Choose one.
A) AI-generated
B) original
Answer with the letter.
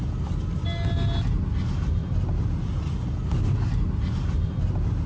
B